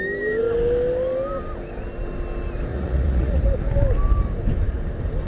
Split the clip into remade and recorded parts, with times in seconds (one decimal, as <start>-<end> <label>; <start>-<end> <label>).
0.0-2.7 recorded; 2.7-3.4 remade; 3.4-5.3 recorded